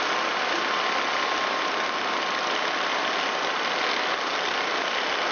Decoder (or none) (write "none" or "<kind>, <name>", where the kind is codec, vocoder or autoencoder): none